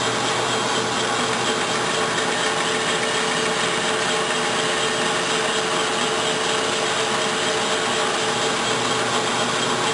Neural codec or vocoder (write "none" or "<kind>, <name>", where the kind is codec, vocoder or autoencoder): none